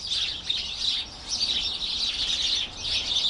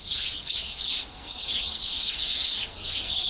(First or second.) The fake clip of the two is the second